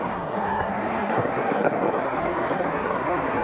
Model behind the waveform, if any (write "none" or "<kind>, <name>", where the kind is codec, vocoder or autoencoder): codec, SNAC